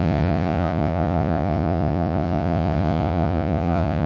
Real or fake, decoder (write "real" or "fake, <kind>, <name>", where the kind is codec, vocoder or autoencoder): fake, vocoder, Vocos